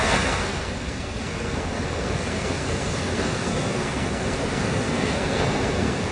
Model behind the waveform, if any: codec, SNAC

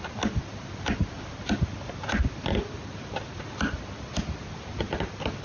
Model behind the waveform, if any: none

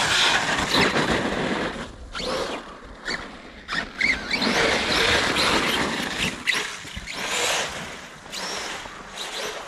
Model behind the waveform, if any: none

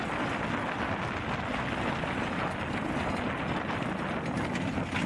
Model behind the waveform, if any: none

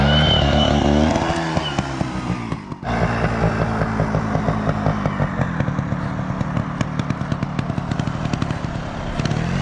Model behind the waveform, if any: none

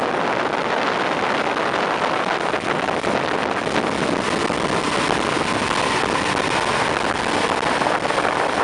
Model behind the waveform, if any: none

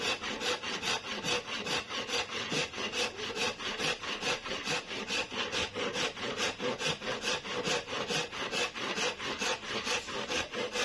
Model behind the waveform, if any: none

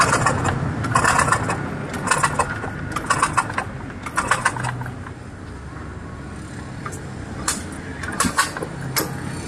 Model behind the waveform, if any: none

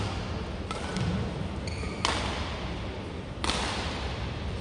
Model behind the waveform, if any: none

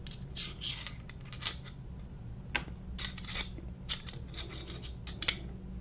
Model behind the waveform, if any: none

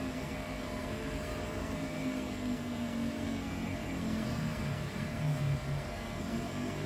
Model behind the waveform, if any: codec, SNAC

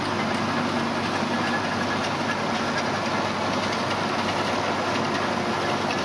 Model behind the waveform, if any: none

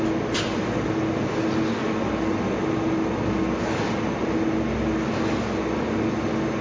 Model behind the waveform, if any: none